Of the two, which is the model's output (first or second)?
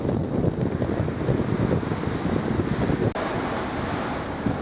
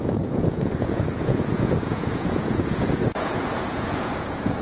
second